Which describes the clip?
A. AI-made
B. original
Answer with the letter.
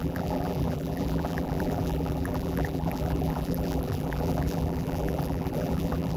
A